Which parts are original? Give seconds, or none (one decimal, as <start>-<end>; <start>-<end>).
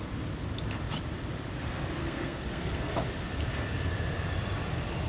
0.0-2.0; 2.9-5.1